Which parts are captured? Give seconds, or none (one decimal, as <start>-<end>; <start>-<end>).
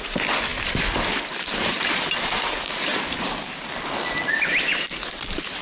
0.0-5.6